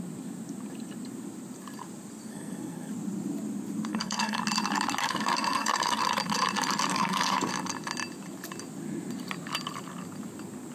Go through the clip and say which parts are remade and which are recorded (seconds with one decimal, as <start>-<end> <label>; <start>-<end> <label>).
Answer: 0.0-2.3 recorded; 2.3-2.9 remade; 2.9-3.9 recorded; 3.9-4.4 remade; 4.4-5.0 recorded; 5.0-6.0 remade; 6.0-6.9 recorded; 6.9-7.5 remade; 7.5-10.7 recorded